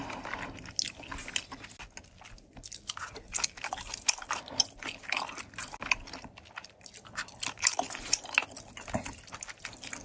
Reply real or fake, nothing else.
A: real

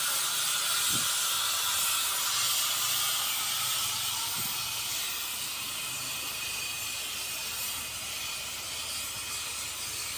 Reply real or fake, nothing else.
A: real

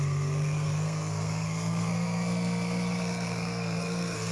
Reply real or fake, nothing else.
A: fake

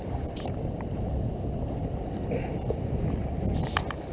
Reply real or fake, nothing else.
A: real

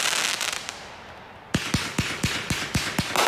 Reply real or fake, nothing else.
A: real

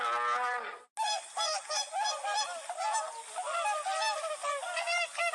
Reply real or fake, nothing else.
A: real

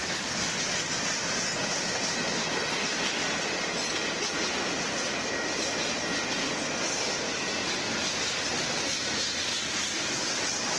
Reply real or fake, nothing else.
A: real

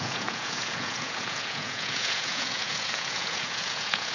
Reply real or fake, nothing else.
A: fake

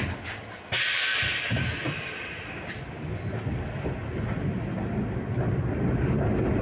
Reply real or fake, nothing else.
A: real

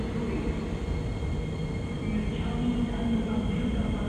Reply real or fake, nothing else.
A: real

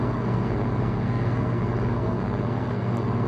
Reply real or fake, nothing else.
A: fake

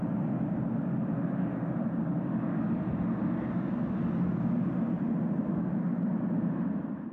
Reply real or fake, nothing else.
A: real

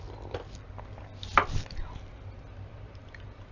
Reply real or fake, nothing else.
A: real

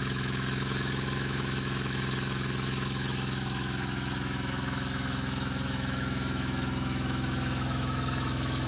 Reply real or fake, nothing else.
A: fake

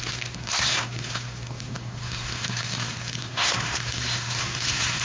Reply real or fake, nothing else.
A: fake